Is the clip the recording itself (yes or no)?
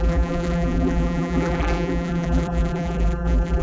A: no